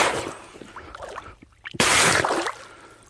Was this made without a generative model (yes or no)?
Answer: no